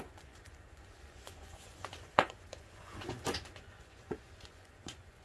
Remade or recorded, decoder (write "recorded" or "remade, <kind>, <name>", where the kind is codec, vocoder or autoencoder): remade, vocoder, Vocos